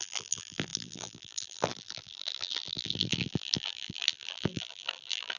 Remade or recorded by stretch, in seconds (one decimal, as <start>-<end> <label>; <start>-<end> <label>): 0.0-5.4 remade